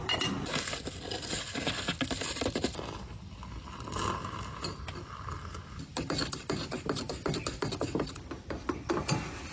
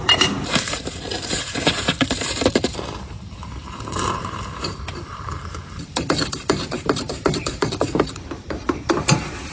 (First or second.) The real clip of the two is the first